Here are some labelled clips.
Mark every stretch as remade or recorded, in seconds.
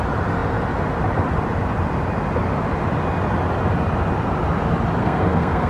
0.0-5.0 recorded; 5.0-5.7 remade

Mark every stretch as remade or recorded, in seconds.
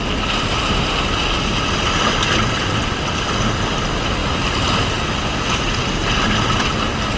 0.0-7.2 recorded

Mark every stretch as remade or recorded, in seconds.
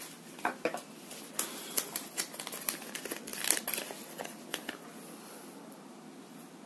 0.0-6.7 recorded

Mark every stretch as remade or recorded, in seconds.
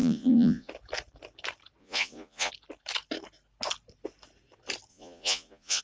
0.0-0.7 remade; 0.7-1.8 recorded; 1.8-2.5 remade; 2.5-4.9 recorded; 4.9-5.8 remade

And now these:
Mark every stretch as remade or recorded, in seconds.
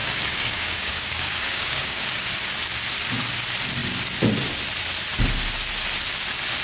0.0-2.3 remade; 2.3-6.6 recorded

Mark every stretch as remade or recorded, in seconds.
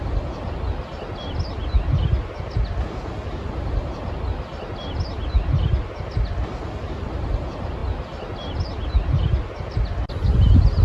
0.0-10.8 recorded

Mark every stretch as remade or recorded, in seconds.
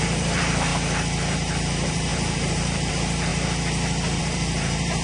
0.0-0.7 remade; 0.7-1.3 recorded; 1.3-3.3 remade; 3.3-4.2 recorded; 4.2-5.0 remade